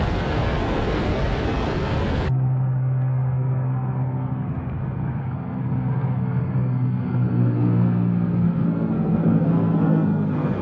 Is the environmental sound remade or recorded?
remade